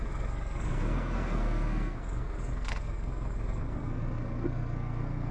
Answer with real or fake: fake